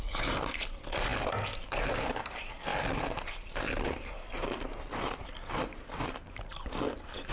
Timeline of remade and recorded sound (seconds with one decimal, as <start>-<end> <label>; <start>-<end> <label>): 0.0-2.7 recorded; 2.7-7.3 remade